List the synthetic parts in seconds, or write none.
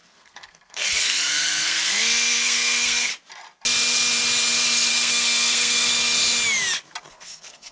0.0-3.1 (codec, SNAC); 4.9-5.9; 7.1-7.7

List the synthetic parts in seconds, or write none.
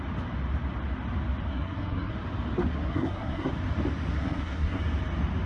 1.5-2.1 (codec, SNAC); 2.7-3.5; 4.1-4.8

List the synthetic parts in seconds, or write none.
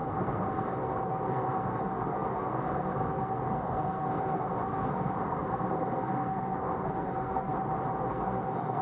0.0-7.5 (codec, SNAC); 8.1-8.8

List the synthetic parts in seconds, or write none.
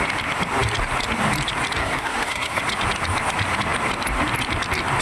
1.8-2.6 (codec, SNAC)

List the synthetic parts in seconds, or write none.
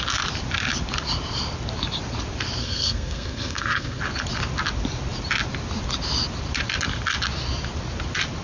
2.6-4.0 (codec, SNAC)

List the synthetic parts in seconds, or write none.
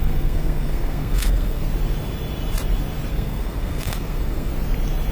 0.0-1.6 (codec, SNAC); 3.1-4.5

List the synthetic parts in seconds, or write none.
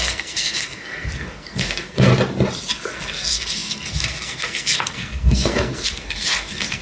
0.0-2.1 (codec, SNAC); 2.7-6.8